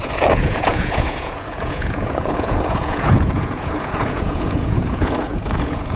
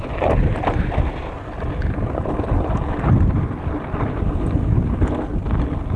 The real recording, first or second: second